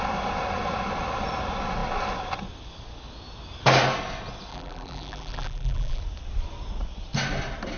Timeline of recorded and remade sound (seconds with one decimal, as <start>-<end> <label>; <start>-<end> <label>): 0.0-4.5 recorded; 4.5-6.0 remade; 6.0-7.8 recorded